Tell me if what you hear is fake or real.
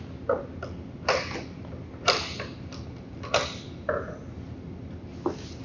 real